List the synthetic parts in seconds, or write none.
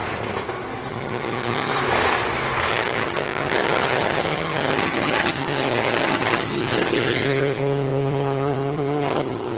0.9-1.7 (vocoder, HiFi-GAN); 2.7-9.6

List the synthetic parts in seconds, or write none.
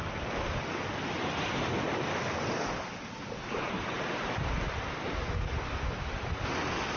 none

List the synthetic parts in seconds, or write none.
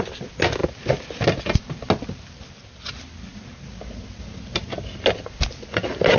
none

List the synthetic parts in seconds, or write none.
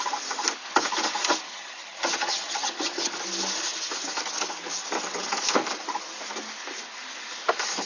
1.5-3.1 (vocoder, HiFi-GAN)